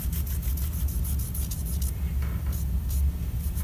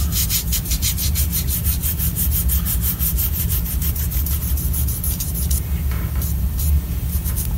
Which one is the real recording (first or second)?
first